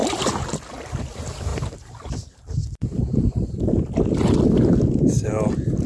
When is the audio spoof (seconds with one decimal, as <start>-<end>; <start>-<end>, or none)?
0.0-1.1; 1.5-2.1; 2.6-3.6

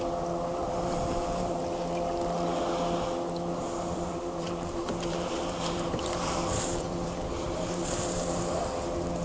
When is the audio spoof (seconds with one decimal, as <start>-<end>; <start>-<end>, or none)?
0.5-1.6; 3.6-8.6

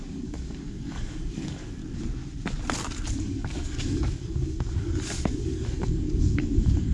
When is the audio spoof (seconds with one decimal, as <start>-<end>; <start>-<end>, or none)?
0.0-1.8; 3.1-6.9